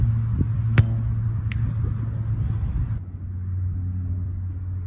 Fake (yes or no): no